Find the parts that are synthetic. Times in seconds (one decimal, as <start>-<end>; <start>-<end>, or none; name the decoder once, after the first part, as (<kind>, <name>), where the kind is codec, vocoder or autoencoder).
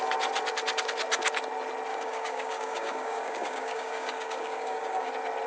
1.9-5.1 (codec, DAC)